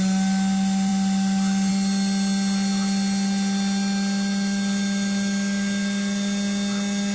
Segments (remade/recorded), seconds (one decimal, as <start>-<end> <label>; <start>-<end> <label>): 0.0-7.1 recorded